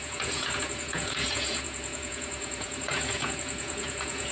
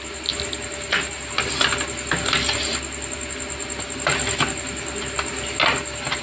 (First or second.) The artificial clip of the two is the first